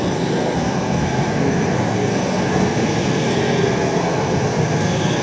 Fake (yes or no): yes